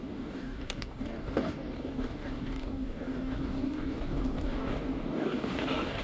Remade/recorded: remade